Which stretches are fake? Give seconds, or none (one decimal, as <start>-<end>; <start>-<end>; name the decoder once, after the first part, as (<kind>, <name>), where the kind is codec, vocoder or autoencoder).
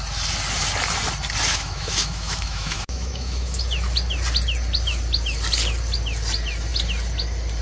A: 1.5-3.6 (autoencoder, DAC-VAE)